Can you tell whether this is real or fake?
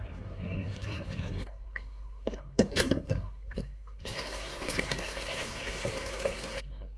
fake